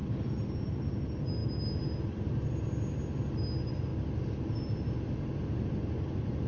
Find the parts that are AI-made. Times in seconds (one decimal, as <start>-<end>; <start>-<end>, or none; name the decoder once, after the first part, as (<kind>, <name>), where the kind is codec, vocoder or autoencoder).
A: none